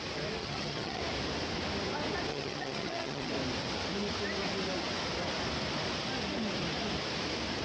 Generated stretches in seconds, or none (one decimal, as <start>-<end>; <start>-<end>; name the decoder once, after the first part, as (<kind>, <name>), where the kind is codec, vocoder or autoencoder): 0.4-1.0 (vocoder, HiFi-GAN); 2.3-3.3